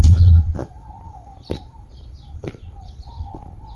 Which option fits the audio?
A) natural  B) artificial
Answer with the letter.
B